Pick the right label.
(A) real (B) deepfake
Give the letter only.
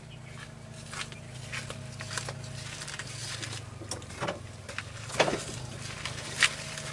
A